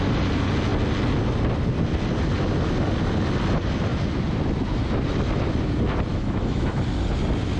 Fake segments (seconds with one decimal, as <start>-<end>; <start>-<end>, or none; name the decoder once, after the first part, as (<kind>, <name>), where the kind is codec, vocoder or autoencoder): 6.1-6.8 (autoencoder, DAC-VAE)